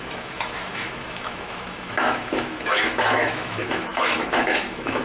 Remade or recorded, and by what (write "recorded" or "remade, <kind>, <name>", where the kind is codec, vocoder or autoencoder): remade, autoencoder, DAC-VAE